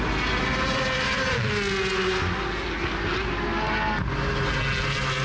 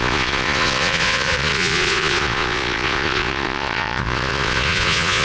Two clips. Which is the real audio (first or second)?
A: first